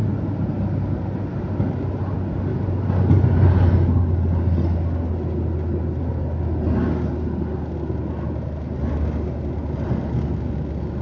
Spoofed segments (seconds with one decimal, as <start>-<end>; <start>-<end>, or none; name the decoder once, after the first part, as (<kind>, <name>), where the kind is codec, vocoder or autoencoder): none